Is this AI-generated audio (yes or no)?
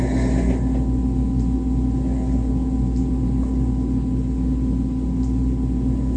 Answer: no